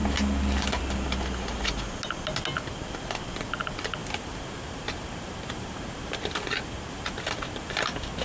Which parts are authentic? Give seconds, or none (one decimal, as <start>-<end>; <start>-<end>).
0.0-4.0